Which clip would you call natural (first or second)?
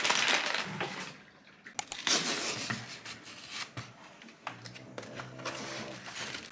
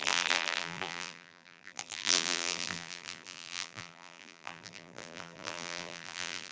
first